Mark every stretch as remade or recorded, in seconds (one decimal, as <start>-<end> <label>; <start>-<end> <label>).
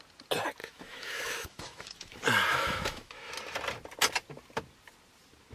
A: 0.0-0.6 recorded; 0.6-2.1 remade; 2.1-2.5 recorded; 2.5-3.3 remade; 3.3-5.5 recorded